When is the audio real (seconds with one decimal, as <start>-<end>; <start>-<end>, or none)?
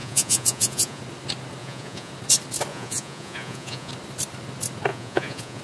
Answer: 1.0-1.6; 2.1-2.7; 3.9-4.9